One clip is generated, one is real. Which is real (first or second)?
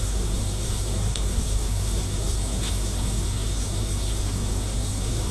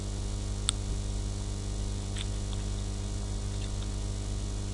second